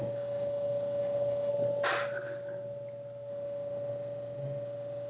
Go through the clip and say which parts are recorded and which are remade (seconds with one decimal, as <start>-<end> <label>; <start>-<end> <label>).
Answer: 0.0-1.5 remade; 1.5-3.3 recorded; 3.3-5.1 remade